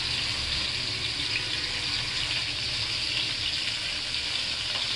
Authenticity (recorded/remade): recorded